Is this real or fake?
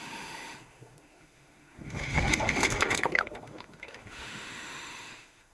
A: fake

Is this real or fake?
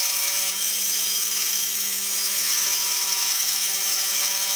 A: fake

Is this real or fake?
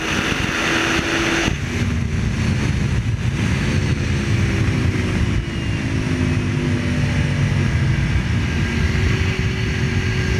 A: real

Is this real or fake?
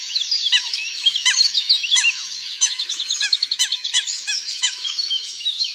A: fake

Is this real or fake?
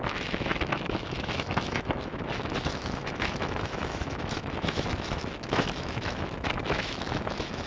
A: fake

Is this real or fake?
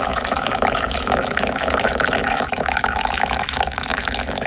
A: fake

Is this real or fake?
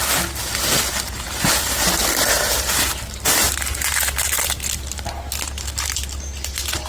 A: real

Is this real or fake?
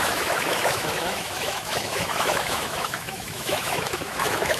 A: fake